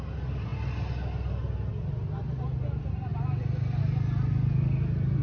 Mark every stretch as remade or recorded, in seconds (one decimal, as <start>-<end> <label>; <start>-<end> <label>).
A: 0.0-5.2 recorded